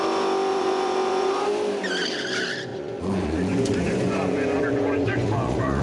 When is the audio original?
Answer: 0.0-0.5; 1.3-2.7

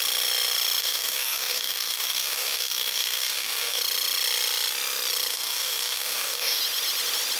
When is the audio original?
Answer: 0.0-0.8; 3.8-5.3; 6.6-7.4

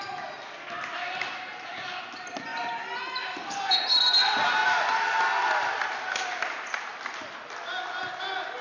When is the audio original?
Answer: 0.0-8.6

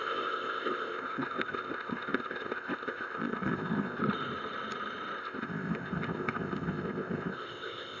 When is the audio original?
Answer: 4.0-5.2

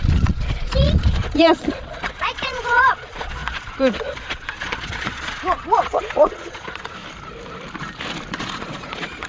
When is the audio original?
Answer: 7.0-8.4

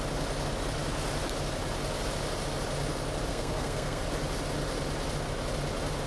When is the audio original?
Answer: 0.0-3.3; 4.0-6.1